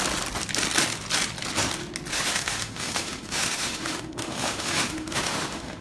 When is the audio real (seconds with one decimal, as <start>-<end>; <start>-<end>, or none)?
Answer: 0.0-2.1